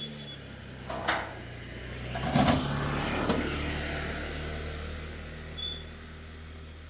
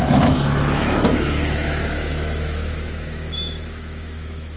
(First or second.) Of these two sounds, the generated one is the second